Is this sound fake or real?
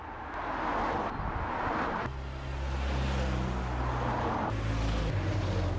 real